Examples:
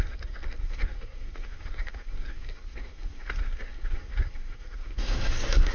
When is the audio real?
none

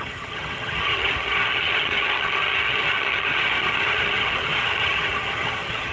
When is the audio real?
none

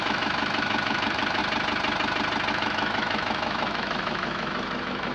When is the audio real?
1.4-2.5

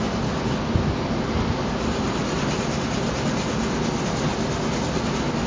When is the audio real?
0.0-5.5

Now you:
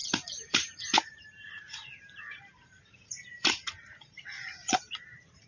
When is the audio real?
none

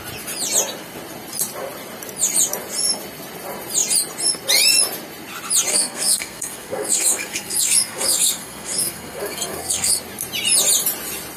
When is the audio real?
0.0-5.7; 10.0-11.4